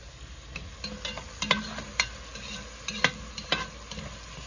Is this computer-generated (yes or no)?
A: no